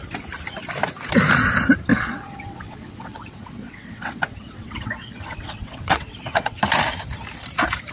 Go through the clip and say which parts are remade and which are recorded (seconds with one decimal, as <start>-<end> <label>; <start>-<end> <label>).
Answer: 0.0-1.9 recorded; 1.9-6.6 remade; 6.6-7.9 recorded